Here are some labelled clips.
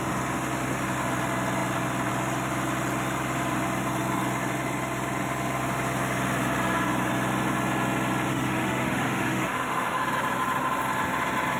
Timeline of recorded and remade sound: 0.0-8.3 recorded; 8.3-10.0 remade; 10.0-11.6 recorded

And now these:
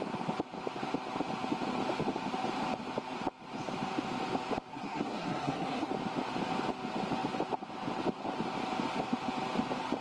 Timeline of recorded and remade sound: 0.0-4.7 recorded; 4.7-5.9 remade; 5.9-10.0 recorded

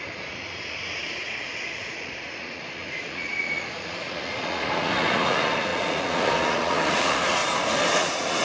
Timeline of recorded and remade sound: 0.0-7.4 remade; 7.4-8.0 recorded; 8.0-8.4 remade

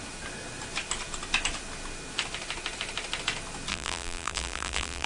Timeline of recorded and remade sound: 0.0-3.7 recorded; 3.7-5.1 remade

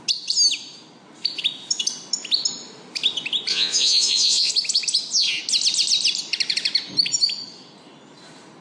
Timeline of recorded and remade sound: 0.0-3.5 recorded; 3.5-4.5 remade; 4.5-8.6 recorded

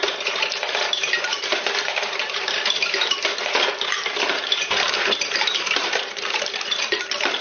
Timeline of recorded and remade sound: 0.0-7.4 remade